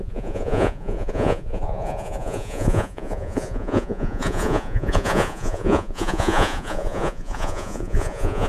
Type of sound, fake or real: fake